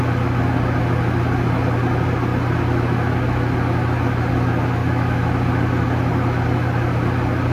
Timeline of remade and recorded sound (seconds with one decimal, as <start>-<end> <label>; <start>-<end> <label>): 0.0-4.8 recorded; 4.8-5.3 remade; 5.3-7.5 recorded

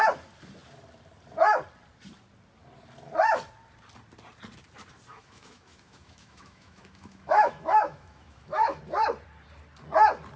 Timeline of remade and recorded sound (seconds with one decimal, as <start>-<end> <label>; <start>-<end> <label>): 0.0-5.1 recorded; 5.1-8.8 remade; 8.8-10.4 recorded

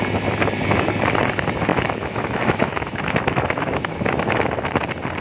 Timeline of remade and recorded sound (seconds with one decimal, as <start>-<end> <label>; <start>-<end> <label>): 0.0-1.7 recorded; 1.7-4.8 remade; 4.8-5.2 recorded

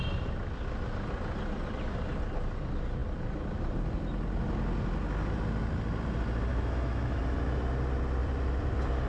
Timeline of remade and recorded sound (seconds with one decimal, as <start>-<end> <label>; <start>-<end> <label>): 0.0-6.5 recorded; 6.5-7.2 remade; 7.2-9.1 recorded

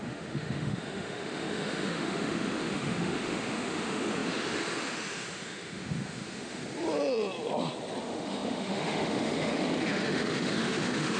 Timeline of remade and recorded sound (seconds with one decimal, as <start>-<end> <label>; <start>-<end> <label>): 0.0-6.6 remade; 6.6-8.0 recorded; 8.0-11.2 remade